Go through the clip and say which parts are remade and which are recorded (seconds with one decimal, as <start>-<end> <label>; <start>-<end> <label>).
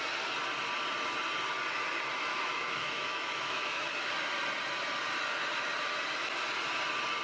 0.0-2.3 recorded; 2.3-4.1 remade; 4.1-7.2 recorded